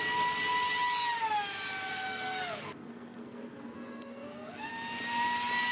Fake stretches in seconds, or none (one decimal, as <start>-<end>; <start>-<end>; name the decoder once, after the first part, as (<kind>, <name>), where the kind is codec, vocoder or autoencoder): 1.9-4.7 (codec, SNAC)